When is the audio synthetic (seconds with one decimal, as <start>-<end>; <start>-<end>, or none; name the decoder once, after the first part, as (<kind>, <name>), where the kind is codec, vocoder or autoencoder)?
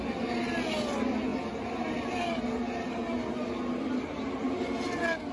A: none